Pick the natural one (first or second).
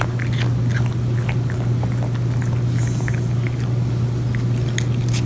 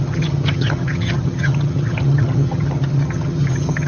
first